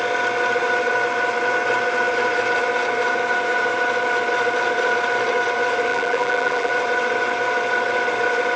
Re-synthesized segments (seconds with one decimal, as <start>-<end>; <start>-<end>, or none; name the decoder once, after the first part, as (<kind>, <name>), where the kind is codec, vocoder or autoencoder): 5.9-6.7 (vocoder, BigVGAN v2)